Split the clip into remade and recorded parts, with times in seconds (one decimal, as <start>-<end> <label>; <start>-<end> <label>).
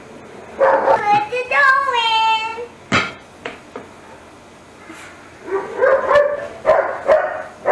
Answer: 0.0-7.7 recorded